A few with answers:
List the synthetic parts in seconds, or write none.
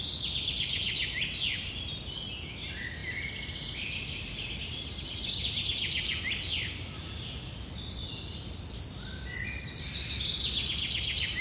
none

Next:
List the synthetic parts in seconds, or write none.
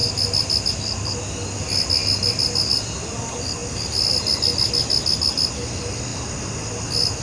none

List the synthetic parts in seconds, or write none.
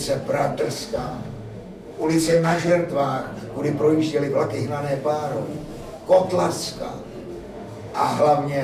0.6-2.7 (autoencoder, DAC-VAE); 7.3-8.2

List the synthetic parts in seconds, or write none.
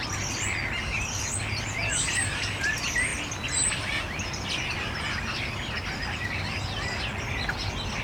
none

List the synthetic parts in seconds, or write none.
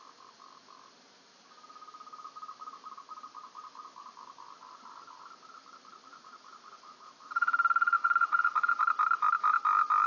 6.1-8.8 (vocoder, Vocos)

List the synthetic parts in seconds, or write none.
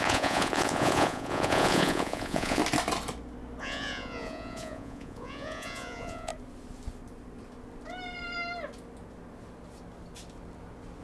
0.0-2.6 (vocoder, Vocos); 3.6-6.3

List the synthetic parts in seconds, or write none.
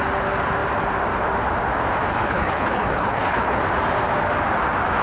2.1-3.6 (codec, HILCodec)